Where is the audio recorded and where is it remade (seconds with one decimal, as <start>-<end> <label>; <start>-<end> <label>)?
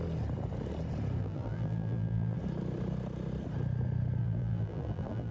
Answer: 0.0-1.2 recorded; 1.2-2.4 remade; 2.4-4.2 recorded; 4.2-5.3 remade